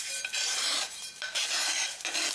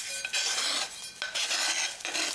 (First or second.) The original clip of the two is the second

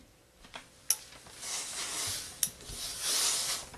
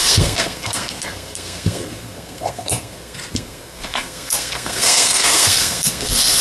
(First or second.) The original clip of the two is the first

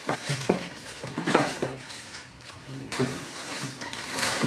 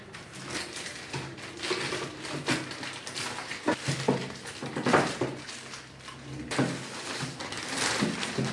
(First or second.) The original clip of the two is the second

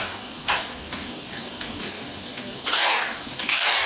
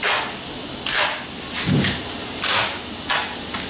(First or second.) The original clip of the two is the second